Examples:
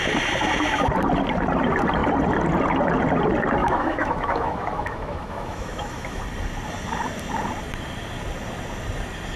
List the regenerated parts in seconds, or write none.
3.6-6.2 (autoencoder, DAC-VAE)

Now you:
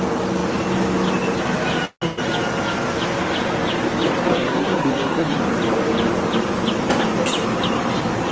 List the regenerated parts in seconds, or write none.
4.3-5.4 (codec, SNAC)

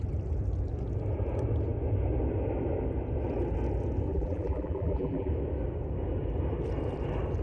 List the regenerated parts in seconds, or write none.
4.1-5.3 (vocoder, BigVGAN v2)

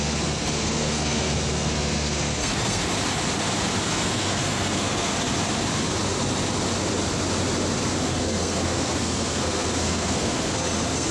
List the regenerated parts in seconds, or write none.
0.0-2.9 (codec, SNAC); 3.8-5.1; 8.0-11.1

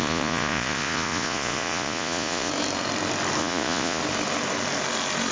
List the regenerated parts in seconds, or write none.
0.0-2.5 (vocoder, Vocos); 3.4-4.0

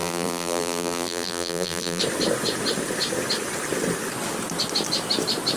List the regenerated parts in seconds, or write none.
0.0-2.0 (vocoder, BigVGAN v2)